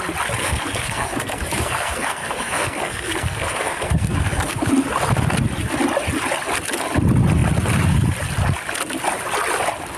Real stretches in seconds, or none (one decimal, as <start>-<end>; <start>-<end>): 0.0-0.4; 4.7-10.0